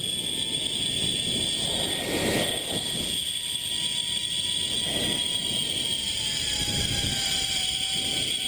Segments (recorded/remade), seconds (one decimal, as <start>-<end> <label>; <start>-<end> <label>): 0.0-0.9 recorded; 0.9-2.2 remade; 2.2-6.2 recorded; 6.2-8.5 remade

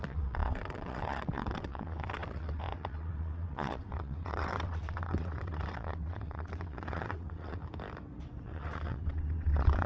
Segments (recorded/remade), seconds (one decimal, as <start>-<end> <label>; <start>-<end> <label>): 0.0-7.6 remade; 7.6-8.4 recorded; 8.4-9.9 remade

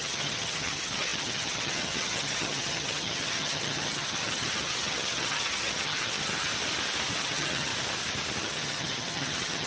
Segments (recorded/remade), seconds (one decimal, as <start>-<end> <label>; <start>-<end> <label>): 0.0-6.5 remade; 6.5-7.2 recorded; 7.2-7.7 remade; 7.7-8.4 recorded; 8.4-9.7 remade

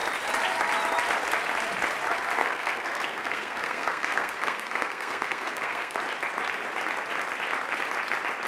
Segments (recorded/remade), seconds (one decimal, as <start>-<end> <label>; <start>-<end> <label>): 0.0-2.4 recorded; 2.4-6.0 remade; 6.0-8.5 recorded

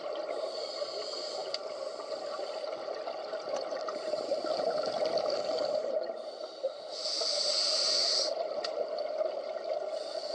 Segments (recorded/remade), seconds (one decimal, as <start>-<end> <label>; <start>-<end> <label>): 0.0-1.4 recorded; 1.4-4.9 remade; 4.9-8.0 recorded; 8.0-9.0 remade; 9.0-10.3 recorded

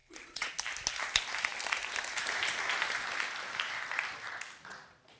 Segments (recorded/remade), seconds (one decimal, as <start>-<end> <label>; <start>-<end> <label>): 0.0-0.5 remade; 0.5-5.2 recorded

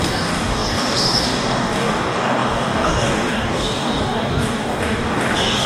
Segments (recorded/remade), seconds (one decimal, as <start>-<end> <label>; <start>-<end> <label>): 0.0-5.7 remade